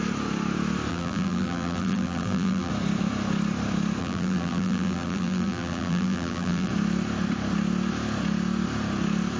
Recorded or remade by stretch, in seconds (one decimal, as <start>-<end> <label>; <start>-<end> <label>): 0.0-0.9 recorded; 0.9-2.7 remade; 2.7-4.0 recorded; 4.0-6.7 remade; 6.7-9.4 recorded